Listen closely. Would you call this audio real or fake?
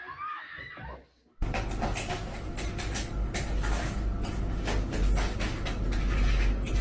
real